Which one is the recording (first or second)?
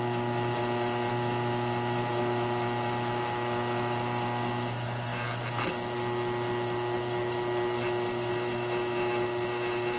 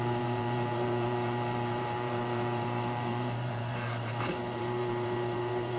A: first